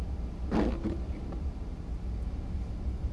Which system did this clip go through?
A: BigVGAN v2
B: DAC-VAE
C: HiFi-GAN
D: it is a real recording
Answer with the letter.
D